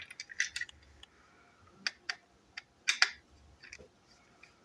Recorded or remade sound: recorded